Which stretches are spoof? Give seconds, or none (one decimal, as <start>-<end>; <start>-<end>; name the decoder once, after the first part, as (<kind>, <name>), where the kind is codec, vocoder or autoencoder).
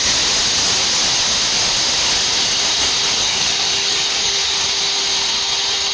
3.2-4.5 (codec, DAC)